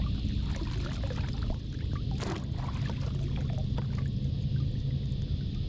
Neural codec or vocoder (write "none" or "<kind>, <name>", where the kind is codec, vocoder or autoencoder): none